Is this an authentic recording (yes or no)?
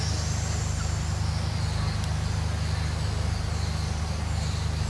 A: yes